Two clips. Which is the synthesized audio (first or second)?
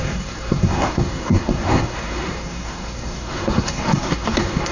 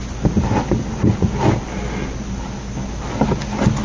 first